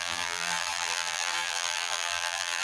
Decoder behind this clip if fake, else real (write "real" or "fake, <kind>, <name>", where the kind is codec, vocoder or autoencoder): fake, vocoder, BigVGAN v2